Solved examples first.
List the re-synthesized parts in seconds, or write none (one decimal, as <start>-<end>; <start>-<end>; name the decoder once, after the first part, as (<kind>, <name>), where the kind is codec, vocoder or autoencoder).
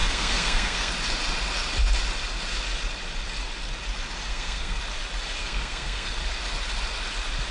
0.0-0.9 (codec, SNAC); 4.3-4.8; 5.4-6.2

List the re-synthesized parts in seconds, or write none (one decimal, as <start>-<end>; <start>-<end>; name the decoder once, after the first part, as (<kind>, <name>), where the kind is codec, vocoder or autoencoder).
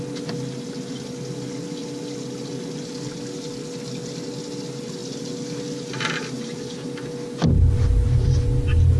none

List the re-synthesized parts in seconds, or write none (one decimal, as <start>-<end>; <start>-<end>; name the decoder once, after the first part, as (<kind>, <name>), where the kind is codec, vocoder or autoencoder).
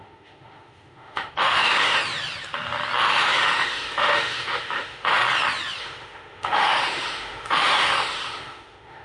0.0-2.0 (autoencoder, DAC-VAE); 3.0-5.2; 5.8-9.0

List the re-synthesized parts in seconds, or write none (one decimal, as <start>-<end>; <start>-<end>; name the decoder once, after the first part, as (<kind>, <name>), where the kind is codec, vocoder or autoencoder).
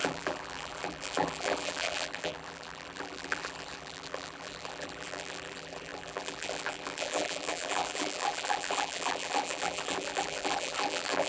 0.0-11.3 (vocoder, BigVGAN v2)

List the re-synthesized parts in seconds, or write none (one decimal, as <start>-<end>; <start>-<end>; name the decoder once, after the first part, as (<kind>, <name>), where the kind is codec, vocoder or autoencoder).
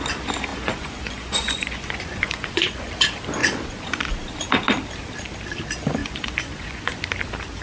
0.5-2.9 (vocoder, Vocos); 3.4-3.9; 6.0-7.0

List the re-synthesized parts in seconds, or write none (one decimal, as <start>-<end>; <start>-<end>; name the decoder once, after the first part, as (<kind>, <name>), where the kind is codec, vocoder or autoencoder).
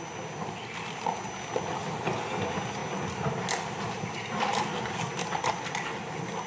none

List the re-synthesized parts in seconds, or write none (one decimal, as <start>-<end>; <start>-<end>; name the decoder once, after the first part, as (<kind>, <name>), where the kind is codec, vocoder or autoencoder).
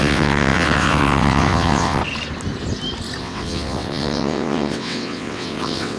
0.0-2.0 (vocoder, WaveNeXt); 3.2-6.0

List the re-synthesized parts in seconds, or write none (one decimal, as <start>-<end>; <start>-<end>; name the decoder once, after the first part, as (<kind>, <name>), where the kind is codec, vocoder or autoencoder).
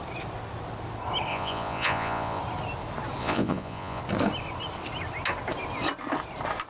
1.3-2.4 (vocoder, Vocos); 3.2-4.0